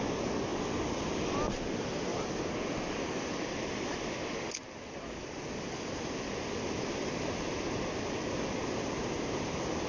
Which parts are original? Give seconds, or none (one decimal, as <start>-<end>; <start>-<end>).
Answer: 0.0-2.1; 3.1-9.9